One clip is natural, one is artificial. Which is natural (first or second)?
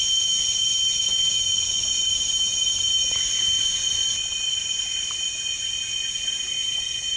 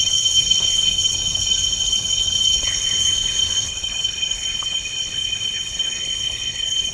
first